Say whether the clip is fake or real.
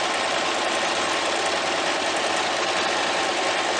real